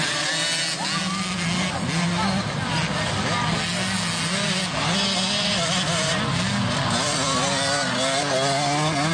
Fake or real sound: real